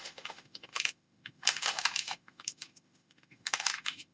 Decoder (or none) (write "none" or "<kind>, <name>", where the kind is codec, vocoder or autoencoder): autoencoder, DAC-VAE